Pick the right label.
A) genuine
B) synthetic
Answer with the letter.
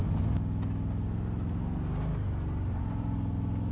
A